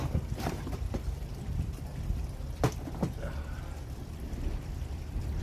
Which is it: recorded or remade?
remade